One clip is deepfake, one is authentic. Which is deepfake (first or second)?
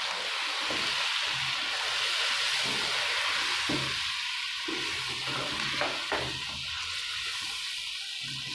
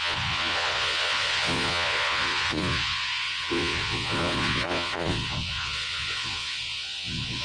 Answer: second